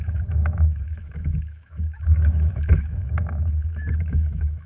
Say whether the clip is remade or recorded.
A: remade